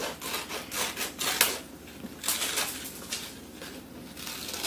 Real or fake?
real